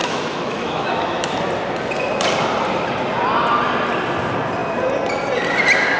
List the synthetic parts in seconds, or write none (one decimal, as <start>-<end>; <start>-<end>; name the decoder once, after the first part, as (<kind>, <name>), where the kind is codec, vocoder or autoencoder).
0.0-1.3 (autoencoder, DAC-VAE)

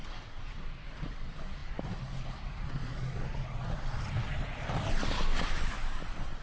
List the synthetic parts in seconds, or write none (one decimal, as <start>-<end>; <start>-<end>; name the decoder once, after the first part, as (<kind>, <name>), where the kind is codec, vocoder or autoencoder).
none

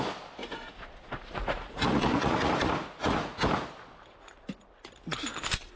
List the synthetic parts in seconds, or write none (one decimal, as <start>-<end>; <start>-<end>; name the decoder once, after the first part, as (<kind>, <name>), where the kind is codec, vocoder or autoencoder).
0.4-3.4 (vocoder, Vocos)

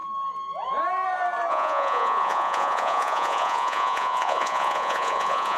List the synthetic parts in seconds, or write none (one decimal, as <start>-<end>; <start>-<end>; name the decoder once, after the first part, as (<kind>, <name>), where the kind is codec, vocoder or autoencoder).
1.5-5.6 (vocoder, Vocos)

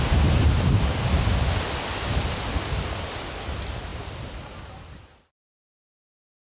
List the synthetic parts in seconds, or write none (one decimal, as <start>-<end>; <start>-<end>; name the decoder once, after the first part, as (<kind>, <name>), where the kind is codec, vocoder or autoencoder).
none

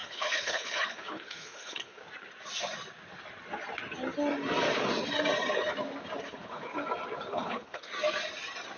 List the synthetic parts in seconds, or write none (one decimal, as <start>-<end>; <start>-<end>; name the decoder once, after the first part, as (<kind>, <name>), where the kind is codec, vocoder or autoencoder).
0.0-2.0 (codec, HILCodec); 6.2-6.7; 7.3-7.9

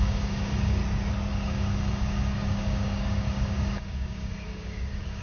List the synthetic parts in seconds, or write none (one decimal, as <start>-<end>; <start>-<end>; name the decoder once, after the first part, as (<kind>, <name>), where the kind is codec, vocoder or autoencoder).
0.0-0.8 (codec, DAC); 1.3-5.2